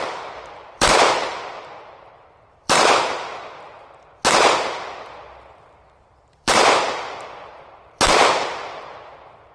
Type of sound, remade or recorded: remade